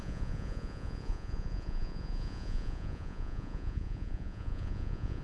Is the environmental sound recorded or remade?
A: remade